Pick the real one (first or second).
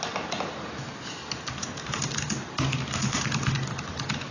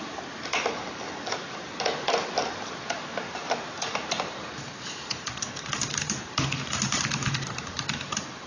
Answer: first